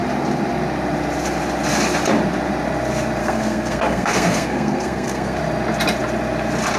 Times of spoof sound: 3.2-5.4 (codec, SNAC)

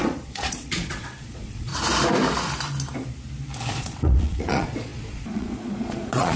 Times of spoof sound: 0.0-1.7 (vocoder, Vocos); 3.7-6.4

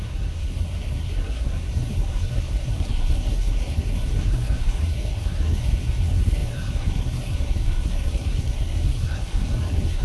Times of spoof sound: 0.0-10.0 (codec, SNAC)

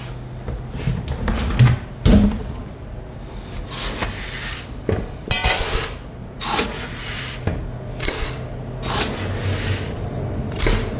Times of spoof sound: 6.2-7.2 (vocoder, Vocos)